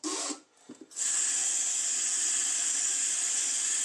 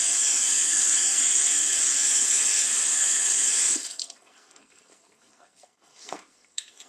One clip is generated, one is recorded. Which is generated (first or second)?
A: second